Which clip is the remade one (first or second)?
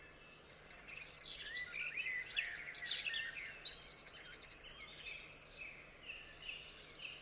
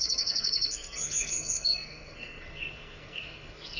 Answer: second